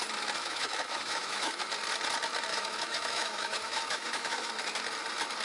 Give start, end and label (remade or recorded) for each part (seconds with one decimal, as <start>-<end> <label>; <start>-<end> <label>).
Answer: 0.0-0.4 recorded; 0.4-1.6 remade; 1.6-2.5 recorded; 2.5-4.5 remade; 4.5-5.4 recorded